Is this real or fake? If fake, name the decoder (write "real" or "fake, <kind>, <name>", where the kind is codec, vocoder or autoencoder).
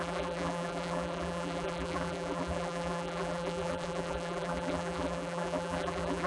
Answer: fake, vocoder, BigVGAN v2